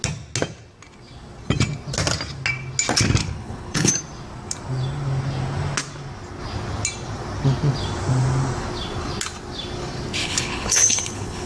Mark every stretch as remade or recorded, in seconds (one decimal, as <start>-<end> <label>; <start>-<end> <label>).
0.0-3.2 recorded; 3.2-3.9 remade; 3.9-10.2 recorded; 10.2-11.5 remade